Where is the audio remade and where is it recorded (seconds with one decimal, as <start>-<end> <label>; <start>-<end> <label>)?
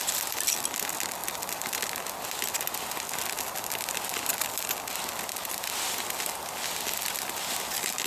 0.0-8.1 recorded